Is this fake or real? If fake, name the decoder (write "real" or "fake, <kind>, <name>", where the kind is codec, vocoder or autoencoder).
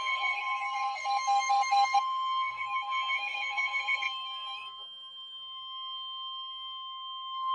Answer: fake, codec, SNAC